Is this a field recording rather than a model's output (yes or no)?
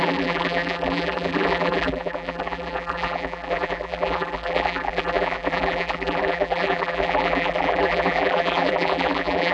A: no